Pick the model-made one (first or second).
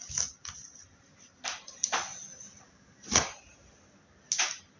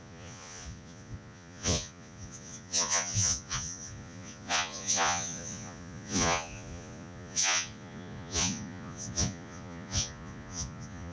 second